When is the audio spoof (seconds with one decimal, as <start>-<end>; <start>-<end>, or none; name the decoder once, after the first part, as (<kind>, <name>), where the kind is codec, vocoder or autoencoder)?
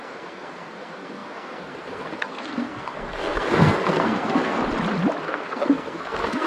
0.0-4.6 (codec, SNAC); 5.2-6.5